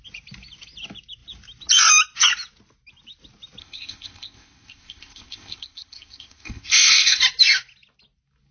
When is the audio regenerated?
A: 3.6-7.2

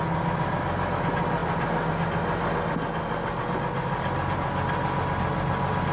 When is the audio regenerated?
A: none

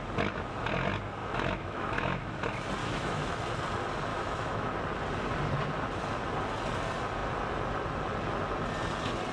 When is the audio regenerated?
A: 1.2-2.3; 2.8-3.4; 4.1-4.7

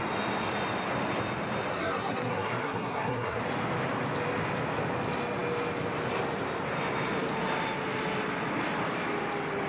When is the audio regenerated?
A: 1.7-3.4

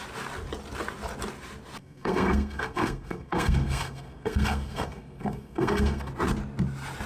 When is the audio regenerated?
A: 1.8-6.1

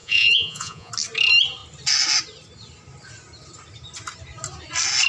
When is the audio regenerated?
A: 0.0-0.9

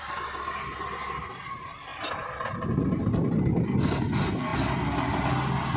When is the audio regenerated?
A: none

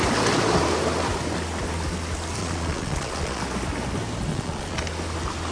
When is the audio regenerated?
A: 2.4-3.4; 4.3-4.8